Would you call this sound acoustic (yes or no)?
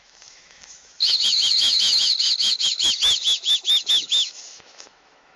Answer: no